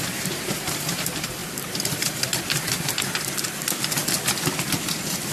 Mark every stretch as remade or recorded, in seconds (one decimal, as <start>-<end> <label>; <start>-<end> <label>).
0.0-1.4 recorded; 1.4-4.6 remade; 4.6-5.3 recorded